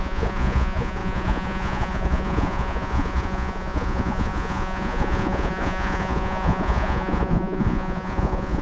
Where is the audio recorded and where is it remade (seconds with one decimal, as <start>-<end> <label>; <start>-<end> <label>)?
0.0-8.6 remade